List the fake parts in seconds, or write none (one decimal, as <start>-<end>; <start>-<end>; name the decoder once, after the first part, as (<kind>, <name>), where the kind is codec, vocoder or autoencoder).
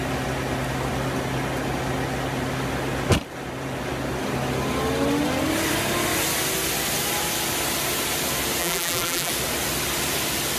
8.6-9.3 (vocoder, BigVGAN v2)